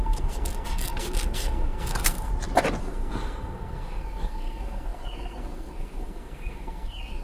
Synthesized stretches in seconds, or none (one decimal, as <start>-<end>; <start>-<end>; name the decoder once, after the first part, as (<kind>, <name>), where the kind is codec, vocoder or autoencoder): 0.0-2.3 (codec, SNAC); 2.8-7.2